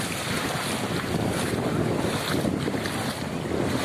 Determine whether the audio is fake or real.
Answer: real